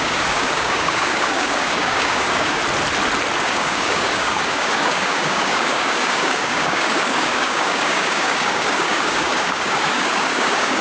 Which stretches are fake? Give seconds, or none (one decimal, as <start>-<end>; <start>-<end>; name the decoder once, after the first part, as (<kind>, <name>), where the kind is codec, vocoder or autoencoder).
0.0-2.6 (codec, DAC); 3.4-10.8